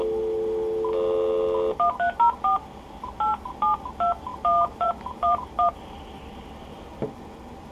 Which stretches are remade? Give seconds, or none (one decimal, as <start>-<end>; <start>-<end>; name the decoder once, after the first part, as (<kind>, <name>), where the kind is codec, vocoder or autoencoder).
4.3-5.7 (vocoder, BigVGAN v2)